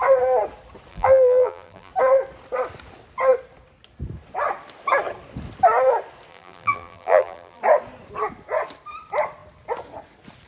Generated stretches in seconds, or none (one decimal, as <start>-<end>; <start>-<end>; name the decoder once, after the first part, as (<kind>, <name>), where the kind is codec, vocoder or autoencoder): 0.9-1.9 (vocoder, BigVGAN v2); 6.3-7.6